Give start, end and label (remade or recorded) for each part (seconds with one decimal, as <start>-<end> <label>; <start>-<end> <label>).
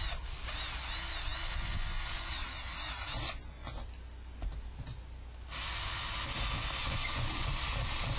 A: 0.0-1.3 recorded; 1.3-2.3 remade; 2.3-6.8 recorded; 6.8-7.6 remade; 7.6-8.2 recorded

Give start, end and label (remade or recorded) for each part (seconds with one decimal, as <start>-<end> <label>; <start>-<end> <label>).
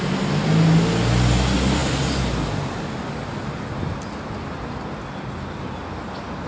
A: 0.0-6.5 recorded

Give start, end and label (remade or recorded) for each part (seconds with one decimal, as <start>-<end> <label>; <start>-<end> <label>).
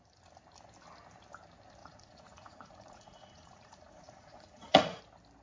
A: 0.0-1.8 recorded; 1.8-5.0 remade; 5.0-5.4 recorded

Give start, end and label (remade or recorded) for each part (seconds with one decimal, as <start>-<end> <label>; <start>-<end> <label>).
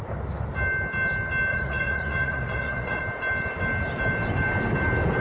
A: 0.0-1.5 recorded; 1.5-3.0 remade; 3.0-5.2 recorded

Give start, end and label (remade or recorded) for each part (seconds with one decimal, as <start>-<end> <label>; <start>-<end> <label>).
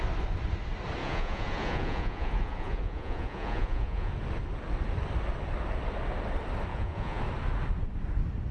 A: 0.0-1.0 recorded; 1.0-4.1 remade; 4.1-6.7 recorded; 6.7-7.2 remade; 7.2-8.5 recorded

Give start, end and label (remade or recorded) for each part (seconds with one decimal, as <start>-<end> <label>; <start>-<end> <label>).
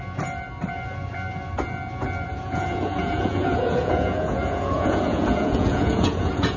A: 0.0-2.3 recorded; 2.3-6.6 remade